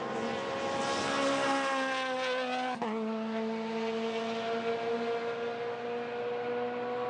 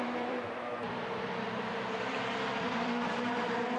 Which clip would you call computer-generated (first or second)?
second